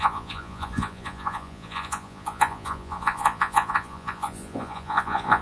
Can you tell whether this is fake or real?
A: fake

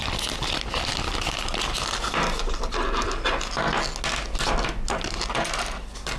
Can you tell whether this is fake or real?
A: real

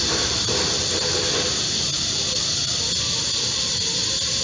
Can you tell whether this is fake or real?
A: real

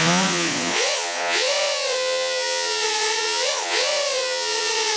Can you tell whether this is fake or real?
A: fake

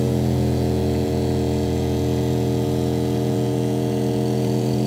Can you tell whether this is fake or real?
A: fake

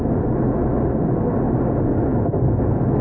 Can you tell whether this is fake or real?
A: real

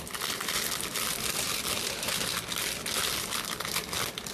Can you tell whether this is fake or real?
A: real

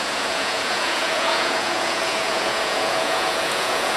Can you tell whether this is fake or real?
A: fake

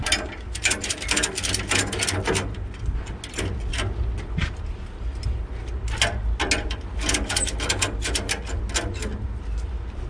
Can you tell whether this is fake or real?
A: real